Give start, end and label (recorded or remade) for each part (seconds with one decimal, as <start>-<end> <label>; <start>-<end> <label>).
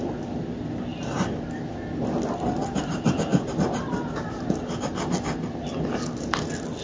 0.0-6.8 recorded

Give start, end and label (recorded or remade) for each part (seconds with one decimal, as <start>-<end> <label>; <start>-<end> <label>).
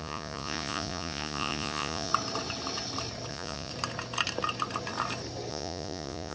0.0-2.1 remade; 2.1-3.3 recorded; 3.3-3.7 remade; 3.7-5.5 recorded; 5.5-6.3 remade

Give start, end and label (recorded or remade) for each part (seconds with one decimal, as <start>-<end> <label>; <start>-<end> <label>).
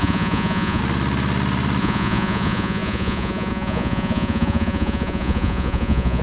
0.0-0.8 remade; 0.8-1.8 recorded; 1.8-6.2 remade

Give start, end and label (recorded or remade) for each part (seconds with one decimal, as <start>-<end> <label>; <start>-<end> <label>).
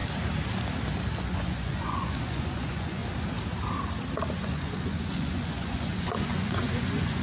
0.0-1.2 recorded; 1.2-3.0 remade; 3.0-4.3 recorded; 4.3-7.2 remade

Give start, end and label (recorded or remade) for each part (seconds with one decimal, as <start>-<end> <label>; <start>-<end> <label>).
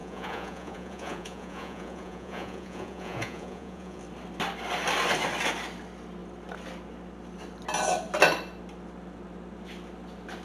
0.0-4.0 remade; 4.0-10.4 recorded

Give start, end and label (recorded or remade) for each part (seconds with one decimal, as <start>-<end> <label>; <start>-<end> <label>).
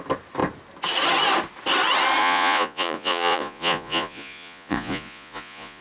0.0-2.2 recorded; 2.2-5.8 remade